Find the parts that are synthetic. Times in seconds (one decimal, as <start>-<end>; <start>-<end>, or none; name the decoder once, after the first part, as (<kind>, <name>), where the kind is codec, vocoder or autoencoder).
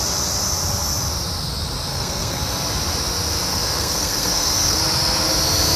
1.9-2.4 (codec, SNAC); 3.5-4.8